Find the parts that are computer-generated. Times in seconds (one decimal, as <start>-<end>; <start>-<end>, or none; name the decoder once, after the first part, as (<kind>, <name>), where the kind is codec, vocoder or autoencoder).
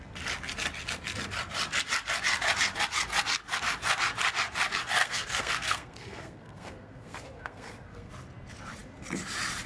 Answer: 5.0-8.1 (codec, SNAC)